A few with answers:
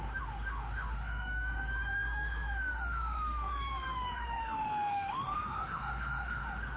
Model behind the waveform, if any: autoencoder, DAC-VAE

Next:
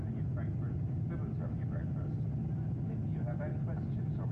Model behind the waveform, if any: none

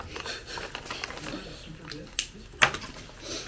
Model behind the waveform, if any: none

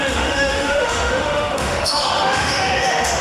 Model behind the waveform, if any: autoencoder, DAC-VAE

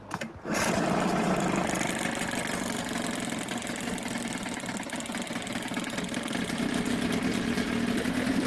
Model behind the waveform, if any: none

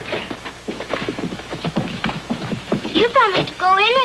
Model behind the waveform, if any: autoencoder, DAC-VAE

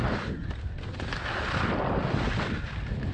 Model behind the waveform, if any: none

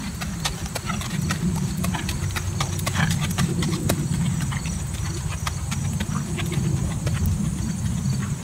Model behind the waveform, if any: none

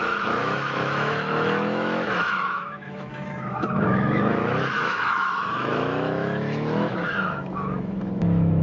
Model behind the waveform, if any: autoencoder, DAC-VAE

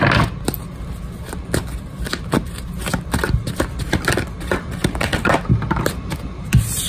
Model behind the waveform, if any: none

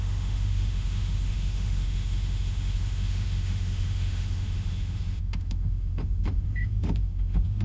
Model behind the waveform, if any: autoencoder, DAC-VAE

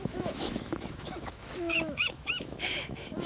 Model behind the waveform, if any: autoencoder, DAC-VAE